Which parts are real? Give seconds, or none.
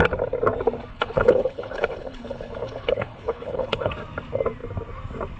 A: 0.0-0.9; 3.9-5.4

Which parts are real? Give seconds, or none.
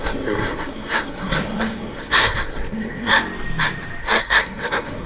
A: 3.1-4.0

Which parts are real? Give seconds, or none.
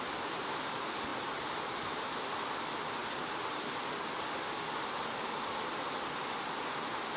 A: 0.0-7.2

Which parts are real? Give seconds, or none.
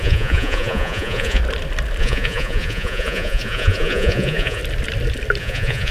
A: 1.4-2.0; 4.6-5.4